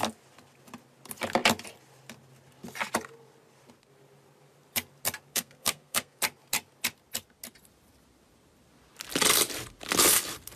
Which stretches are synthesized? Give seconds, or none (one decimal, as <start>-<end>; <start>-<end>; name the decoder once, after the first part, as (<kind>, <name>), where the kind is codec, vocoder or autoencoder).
5.3-6.2 (codec, SNAC)